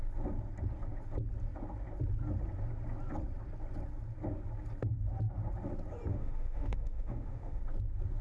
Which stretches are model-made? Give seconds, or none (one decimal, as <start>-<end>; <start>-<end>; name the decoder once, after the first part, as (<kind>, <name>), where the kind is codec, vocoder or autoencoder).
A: 6.1-7.6 (autoencoder, DAC-VAE)

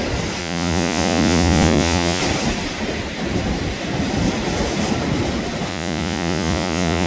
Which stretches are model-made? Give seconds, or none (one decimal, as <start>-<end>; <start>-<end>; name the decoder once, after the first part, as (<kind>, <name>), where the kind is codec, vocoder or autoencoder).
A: 0.4-2.2 (vocoder, Vocos); 5.7-7.1

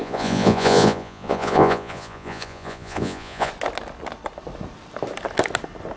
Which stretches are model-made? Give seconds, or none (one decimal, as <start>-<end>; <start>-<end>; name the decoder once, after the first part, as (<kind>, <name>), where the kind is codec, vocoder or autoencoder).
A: 0.0-3.5 (vocoder, Vocos)

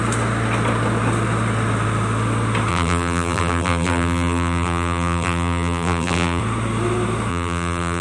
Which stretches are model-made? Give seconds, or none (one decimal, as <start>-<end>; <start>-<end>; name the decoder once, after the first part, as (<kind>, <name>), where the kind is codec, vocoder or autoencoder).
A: 2.7-6.4 (vocoder, BigVGAN v2); 7.3-8.0

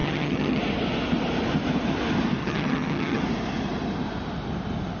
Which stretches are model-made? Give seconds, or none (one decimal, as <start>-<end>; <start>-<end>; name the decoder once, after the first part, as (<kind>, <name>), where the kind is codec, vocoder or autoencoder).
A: 0.0-0.6 (vocoder, HiFi-GAN); 2.4-3.2

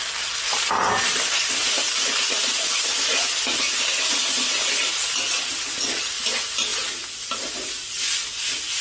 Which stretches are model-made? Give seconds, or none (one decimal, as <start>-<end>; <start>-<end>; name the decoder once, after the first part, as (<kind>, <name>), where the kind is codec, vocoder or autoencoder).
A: none